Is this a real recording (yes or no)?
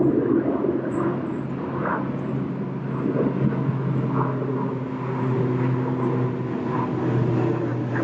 yes